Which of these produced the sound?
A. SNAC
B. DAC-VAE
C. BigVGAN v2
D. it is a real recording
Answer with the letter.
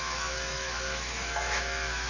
B